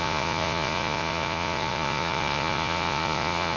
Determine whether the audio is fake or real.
fake